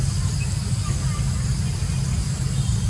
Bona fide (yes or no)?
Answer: yes